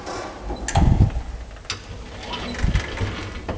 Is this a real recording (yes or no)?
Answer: yes